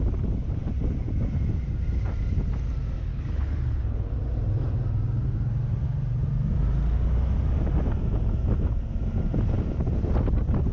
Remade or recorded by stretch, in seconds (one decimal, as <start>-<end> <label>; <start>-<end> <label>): 0.0-3.1 recorded; 3.1-4.1 remade; 4.1-10.7 recorded